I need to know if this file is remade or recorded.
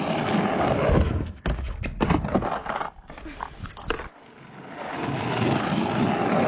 recorded